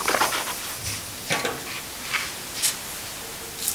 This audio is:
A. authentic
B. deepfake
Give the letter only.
A